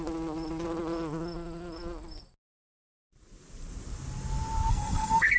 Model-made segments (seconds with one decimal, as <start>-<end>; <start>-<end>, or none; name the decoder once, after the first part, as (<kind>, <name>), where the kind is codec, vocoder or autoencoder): 4.7-5.4 (codec, SNAC)